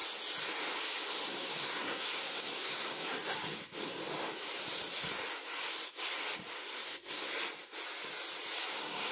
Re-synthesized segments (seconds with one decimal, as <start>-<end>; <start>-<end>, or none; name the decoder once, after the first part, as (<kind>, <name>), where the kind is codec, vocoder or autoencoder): 1.3-3.2 (codec, SNAC); 6.6-7.3; 8.7-9.1